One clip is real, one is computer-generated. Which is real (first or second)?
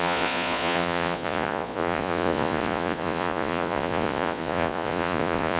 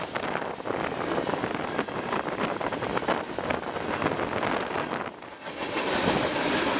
second